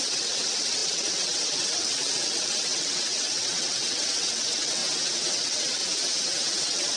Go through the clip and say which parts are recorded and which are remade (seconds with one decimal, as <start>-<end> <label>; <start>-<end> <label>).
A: 0.0-4.8 remade; 4.8-5.3 recorded; 5.3-5.8 remade; 5.8-6.6 recorded; 6.6-7.0 remade